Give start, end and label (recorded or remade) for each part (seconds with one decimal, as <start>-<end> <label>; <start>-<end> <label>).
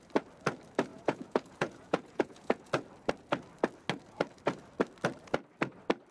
0.0-0.9 recorded; 0.9-2.7 remade; 2.7-6.1 recorded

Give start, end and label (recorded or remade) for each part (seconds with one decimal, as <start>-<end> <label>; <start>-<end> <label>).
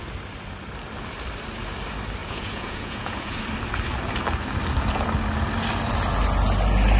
0.0-2.2 recorded; 2.2-3.4 remade; 3.4-7.0 recorded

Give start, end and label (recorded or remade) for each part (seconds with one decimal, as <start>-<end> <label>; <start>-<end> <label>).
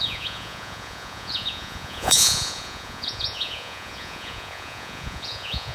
0.0-5.7 remade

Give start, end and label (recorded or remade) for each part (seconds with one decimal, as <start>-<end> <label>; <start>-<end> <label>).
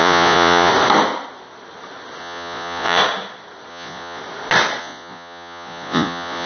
0.0-0.7 remade; 0.7-2.2 recorded; 2.2-3.0 remade; 3.0-3.7 recorded; 3.7-4.2 remade; 4.2-4.8 recorded; 4.8-6.5 remade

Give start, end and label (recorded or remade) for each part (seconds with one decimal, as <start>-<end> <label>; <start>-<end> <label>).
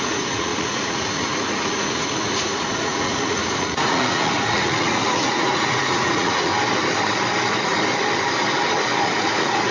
0.0-6.5 remade; 6.5-9.0 recorded; 9.0-9.7 remade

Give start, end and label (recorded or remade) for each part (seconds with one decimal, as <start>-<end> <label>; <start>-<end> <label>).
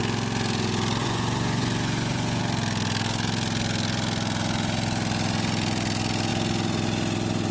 0.0-1.0 recorded; 1.0-2.4 remade; 2.4-7.5 recorded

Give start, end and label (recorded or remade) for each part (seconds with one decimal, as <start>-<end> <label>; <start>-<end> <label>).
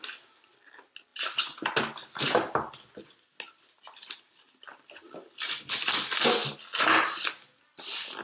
0.0-8.2 recorded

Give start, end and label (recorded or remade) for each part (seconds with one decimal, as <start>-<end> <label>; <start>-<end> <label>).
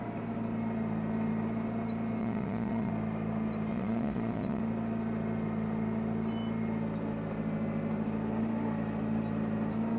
0.0-2.2 recorded; 2.2-2.9 remade; 2.9-3.7 recorded; 3.7-4.6 remade; 4.6-10.0 recorded